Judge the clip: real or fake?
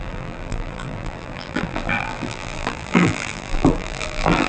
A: fake